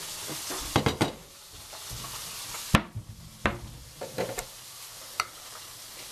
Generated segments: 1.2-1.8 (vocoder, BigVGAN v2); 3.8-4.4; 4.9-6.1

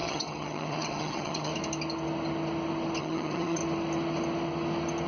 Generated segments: 0.0-1.5 (vocoder, HiFi-GAN); 3.0-3.6

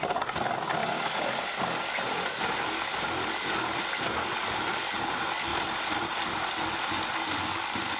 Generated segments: none

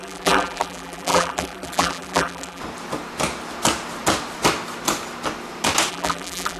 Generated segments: 0.0-2.6 (vocoder, BigVGAN v2); 5.9-6.6